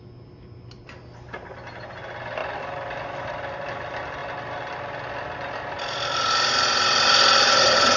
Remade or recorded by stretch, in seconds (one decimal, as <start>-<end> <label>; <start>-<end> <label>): 0.0-8.0 recorded